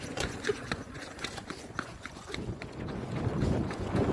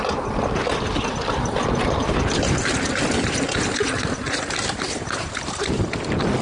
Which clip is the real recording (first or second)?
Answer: second